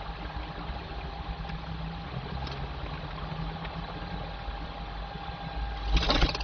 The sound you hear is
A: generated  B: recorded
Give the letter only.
B